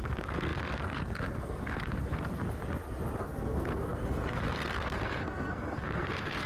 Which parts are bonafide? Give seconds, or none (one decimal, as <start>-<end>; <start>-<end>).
2.3-3.2